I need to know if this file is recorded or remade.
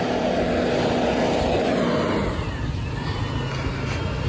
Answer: recorded